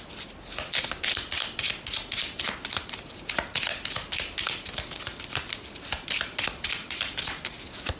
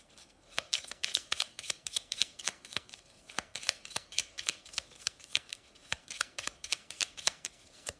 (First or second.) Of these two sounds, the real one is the first